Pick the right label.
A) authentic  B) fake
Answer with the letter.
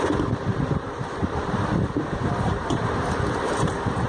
B